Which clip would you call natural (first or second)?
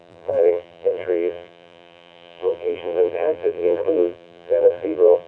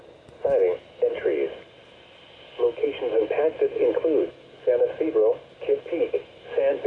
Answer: second